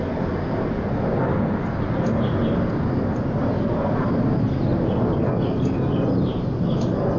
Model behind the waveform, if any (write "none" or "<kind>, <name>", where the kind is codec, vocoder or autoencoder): none